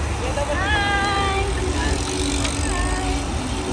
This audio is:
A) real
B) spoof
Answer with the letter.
A